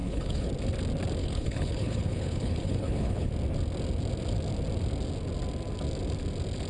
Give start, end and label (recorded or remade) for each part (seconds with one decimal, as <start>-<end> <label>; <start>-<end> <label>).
0.0-0.5 remade; 0.5-1.2 recorded; 1.2-3.3 remade; 3.3-6.7 recorded